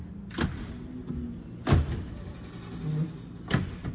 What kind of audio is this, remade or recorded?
recorded